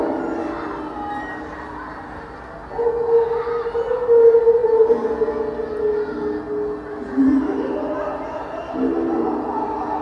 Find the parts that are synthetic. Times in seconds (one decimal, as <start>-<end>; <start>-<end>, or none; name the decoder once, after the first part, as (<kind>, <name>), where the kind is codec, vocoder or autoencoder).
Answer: 4.6-5.1 (vocoder, BigVGAN v2)